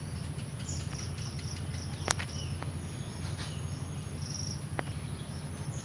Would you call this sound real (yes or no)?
yes